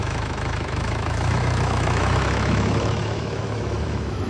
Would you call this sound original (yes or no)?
no